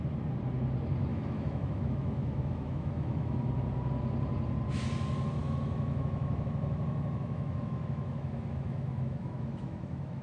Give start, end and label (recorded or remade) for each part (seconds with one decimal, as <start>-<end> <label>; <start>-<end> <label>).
0.0-1.1 recorded; 1.1-3.5 remade; 3.5-5.4 recorded; 5.4-10.2 remade